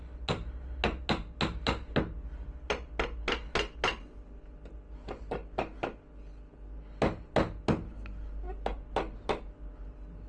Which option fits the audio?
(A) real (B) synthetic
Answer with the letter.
A